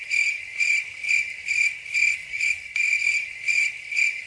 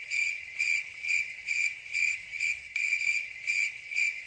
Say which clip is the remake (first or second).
second